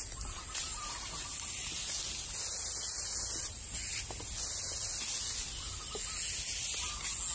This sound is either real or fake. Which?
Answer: real